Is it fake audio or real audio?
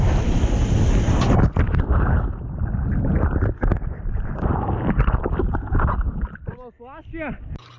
real